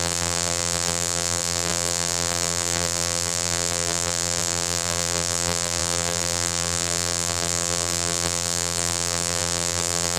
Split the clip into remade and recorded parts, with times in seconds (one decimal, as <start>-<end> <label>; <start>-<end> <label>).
0.0-10.2 remade

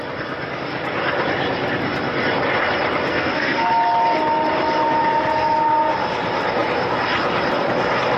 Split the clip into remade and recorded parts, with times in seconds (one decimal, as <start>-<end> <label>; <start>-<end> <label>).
0.0-3.1 recorded; 3.1-3.7 remade; 3.7-8.2 recorded

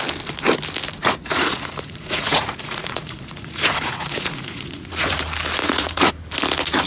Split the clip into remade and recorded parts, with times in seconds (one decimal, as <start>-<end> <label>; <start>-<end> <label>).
0.0-1.0 recorded; 1.0-5.1 remade; 5.1-5.6 recorded; 5.6-6.1 remade; 6.1-6.9 recorded

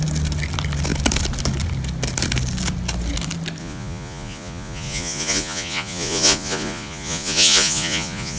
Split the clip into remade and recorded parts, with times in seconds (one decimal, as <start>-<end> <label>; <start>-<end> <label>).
0.0-3.6 recorded; 3.6-8.4 remade